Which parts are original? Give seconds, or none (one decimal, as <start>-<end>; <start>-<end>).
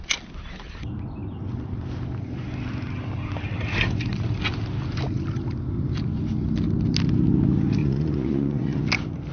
0.0-7.8; 8.8-9.3